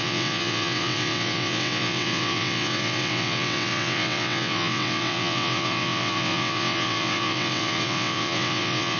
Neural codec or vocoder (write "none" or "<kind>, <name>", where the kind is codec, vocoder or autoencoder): vocoder, WaveNeXt